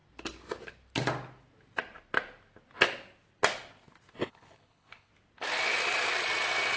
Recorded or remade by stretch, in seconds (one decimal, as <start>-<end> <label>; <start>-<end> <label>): 0.0-4.1 recorded; 4.1-5.1 remade; 5.1-6.8 recorded